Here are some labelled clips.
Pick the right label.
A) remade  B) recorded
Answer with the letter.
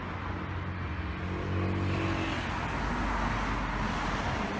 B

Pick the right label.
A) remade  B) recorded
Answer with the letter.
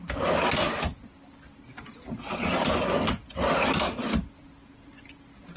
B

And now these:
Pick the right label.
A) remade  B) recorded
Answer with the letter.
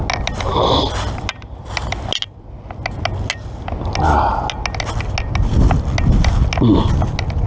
B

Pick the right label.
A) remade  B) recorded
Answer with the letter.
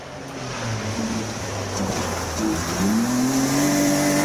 B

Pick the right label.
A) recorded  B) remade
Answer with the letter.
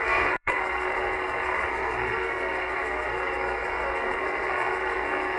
B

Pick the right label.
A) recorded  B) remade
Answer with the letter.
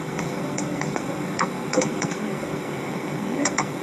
B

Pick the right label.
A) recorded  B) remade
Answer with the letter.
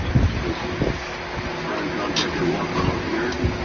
A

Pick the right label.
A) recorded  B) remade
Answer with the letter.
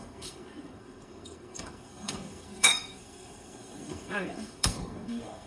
B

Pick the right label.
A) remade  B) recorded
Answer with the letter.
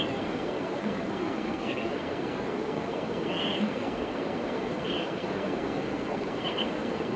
A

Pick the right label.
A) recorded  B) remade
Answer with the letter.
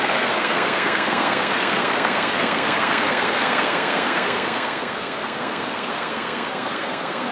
B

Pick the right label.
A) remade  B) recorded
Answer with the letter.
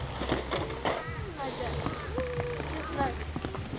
B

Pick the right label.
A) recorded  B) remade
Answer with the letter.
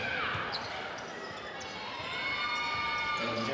A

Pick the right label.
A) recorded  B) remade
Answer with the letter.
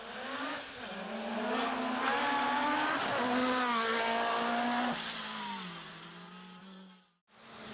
A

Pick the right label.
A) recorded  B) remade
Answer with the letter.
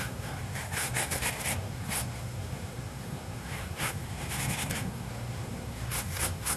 B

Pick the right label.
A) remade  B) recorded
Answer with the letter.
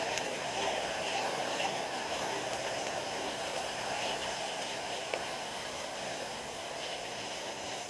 A